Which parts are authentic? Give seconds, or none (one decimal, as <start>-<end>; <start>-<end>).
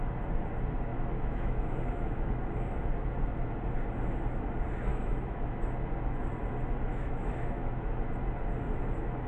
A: 0.0-0.9; 2.4-4.9; 5.6-6.9; 8.0-9.3